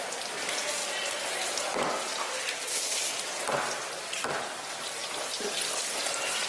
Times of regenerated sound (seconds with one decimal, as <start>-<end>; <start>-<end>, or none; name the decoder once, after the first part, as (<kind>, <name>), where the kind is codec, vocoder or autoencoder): none